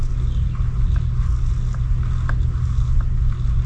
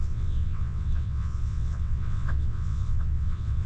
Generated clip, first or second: second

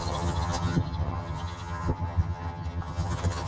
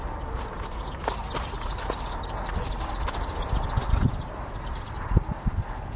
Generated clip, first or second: first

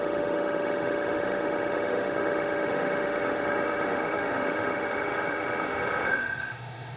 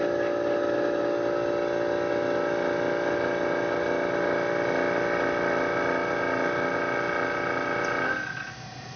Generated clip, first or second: first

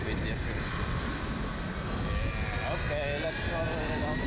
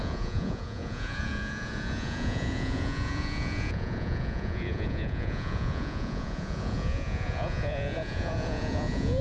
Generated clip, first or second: second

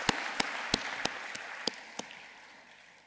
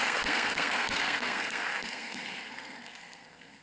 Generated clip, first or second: second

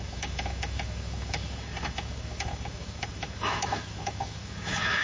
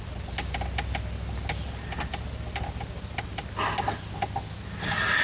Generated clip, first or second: first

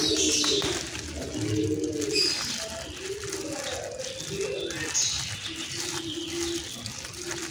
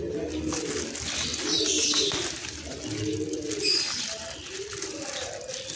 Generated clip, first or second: second